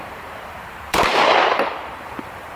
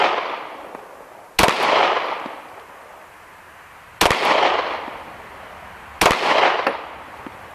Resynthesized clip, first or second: first